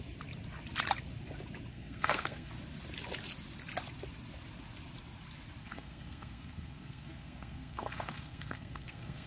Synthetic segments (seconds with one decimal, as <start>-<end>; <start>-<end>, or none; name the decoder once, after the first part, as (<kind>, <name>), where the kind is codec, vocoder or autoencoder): 1.7-2.5 (codec, SNAC); 5.6-9.3